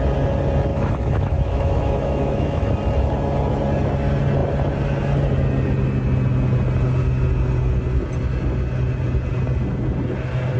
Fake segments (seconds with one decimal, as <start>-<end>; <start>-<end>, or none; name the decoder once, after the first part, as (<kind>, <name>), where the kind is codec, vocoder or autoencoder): 0.7-2.7 (autoencoder, DAC-VAE)